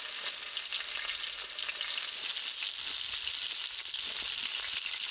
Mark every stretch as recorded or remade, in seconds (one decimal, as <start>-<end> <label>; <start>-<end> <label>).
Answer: 0.0-5.1 recorded